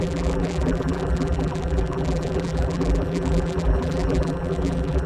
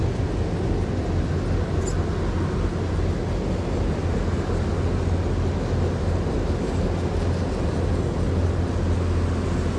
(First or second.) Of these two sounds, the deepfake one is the first